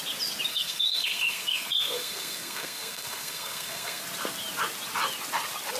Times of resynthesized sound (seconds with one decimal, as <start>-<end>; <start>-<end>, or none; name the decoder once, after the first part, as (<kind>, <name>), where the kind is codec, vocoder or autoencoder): 0.5-4.0 (codec, SNAC)